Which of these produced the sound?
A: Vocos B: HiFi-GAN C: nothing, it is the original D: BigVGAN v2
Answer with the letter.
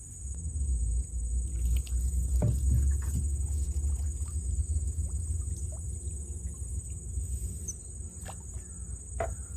C